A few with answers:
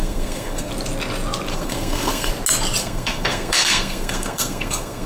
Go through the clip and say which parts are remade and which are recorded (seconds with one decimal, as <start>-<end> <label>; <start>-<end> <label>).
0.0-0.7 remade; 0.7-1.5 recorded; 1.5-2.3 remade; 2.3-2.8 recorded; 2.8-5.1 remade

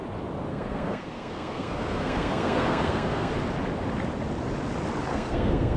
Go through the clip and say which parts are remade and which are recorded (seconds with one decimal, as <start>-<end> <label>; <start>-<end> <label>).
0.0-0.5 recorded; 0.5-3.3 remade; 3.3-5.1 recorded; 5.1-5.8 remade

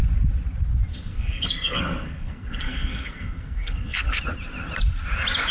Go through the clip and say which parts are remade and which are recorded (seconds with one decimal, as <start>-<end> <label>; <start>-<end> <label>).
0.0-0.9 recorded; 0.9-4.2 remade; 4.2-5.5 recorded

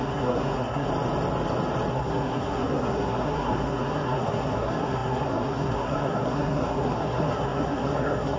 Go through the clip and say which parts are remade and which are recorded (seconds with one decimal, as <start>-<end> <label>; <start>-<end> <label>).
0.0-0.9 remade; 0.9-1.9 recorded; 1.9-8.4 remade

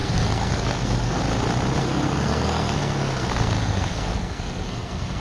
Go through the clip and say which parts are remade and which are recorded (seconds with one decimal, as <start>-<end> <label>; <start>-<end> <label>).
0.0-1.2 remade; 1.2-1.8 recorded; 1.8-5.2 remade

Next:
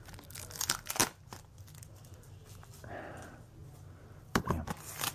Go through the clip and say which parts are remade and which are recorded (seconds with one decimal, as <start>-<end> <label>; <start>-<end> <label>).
0.0-5.1 recorded

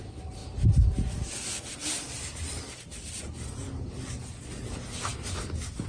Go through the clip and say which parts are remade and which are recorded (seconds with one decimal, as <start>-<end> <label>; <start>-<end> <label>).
0.0-5.9 recorded